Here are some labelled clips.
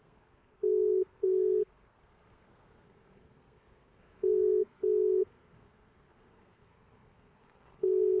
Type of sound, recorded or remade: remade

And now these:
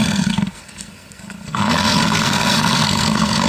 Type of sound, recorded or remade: remade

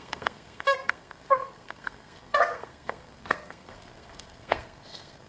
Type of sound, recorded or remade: remade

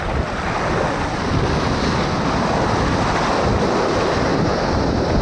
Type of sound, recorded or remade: recorded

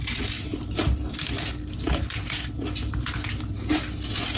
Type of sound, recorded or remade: recorded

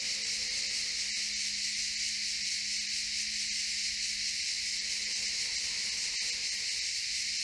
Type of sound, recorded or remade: recorded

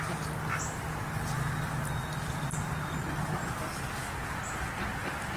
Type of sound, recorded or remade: recorded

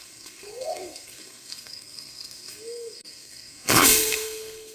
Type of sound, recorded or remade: remade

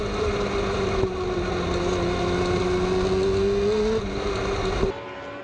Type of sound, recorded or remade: recorded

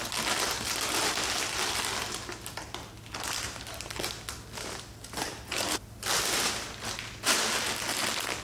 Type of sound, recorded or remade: recorded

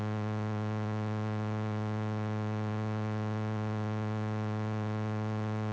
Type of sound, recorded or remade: recorded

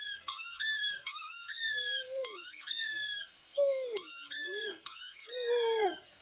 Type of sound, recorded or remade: remade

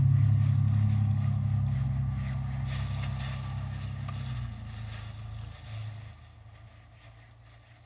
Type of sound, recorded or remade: recorded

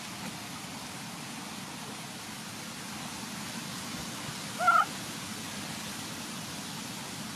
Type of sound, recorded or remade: recorded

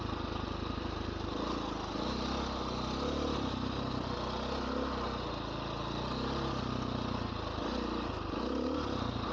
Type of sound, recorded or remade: recorded